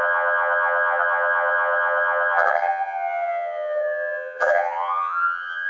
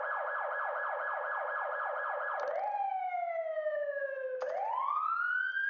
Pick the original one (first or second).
second